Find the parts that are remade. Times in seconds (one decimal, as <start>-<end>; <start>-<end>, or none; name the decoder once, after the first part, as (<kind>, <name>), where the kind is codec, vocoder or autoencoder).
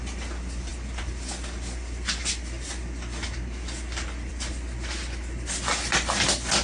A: none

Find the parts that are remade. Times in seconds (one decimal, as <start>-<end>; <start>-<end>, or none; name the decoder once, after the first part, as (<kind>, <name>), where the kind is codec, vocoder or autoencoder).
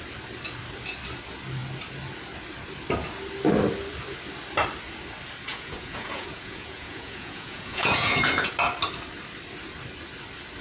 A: 5.5-8.5 (vocoder, Vocos)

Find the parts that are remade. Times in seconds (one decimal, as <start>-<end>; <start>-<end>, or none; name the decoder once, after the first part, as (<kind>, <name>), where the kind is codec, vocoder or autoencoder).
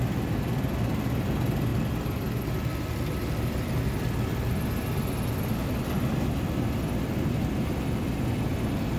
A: none